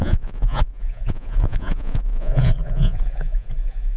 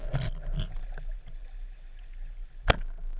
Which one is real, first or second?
second